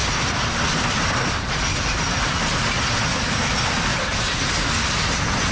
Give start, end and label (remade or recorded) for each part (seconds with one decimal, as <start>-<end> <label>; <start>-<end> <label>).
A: 0.0-1.5 remade; 1.5-5.5 recorded